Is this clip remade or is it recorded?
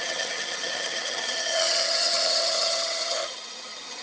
remade